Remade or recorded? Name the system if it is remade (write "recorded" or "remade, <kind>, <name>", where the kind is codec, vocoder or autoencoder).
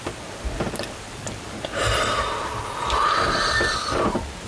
recorded